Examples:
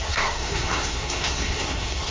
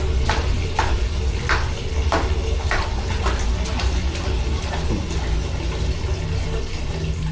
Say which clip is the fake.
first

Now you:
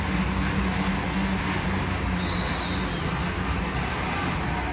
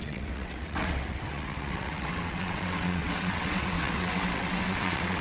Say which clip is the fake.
second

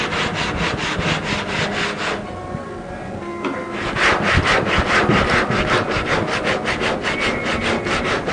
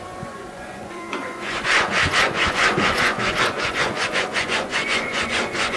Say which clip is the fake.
second